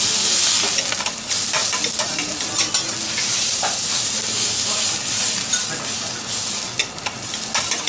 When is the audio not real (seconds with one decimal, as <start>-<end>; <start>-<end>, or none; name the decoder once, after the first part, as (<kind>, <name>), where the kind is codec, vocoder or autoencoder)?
none